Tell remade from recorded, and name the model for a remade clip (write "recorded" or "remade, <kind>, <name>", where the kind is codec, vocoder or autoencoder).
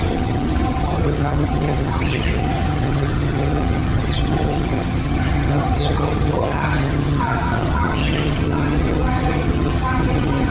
remade, vocoder, HiFi-GAN